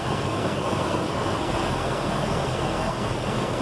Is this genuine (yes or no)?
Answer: no